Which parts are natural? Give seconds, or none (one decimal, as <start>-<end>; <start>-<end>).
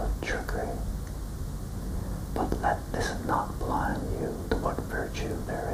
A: 0.0-5.7